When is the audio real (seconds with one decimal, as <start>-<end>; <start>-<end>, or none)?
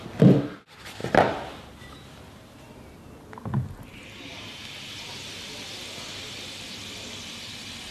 0.0-7.9